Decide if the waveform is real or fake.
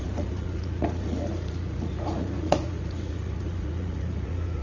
fake